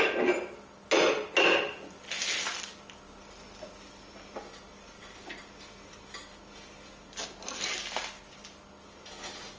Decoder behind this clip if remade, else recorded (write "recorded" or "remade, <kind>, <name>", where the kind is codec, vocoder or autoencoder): recorded